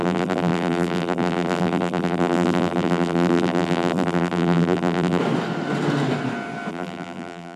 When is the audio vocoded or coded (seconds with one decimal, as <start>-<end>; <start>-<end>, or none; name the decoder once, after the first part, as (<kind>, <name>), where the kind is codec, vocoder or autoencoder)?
0.0-5.2 (vocoder, BigVGAN v2); 6.7-7.6